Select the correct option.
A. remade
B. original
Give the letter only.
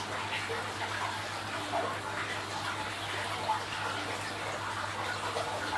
B